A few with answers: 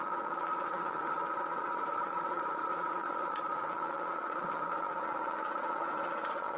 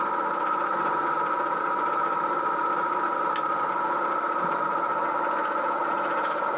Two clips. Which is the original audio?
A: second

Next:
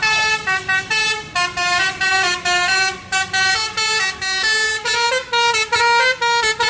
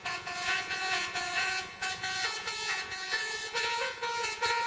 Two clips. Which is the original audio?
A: first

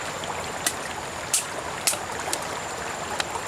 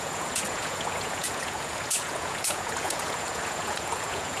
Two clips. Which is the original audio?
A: first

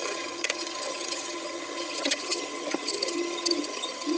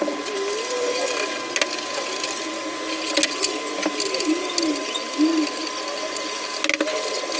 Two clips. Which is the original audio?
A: second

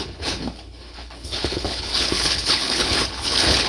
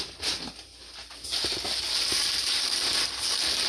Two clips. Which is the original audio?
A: second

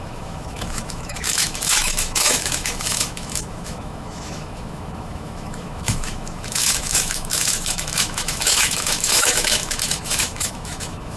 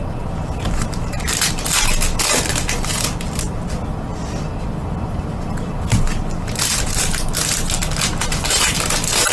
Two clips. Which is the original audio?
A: second